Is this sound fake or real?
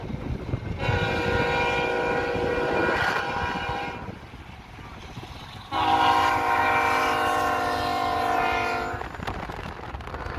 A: real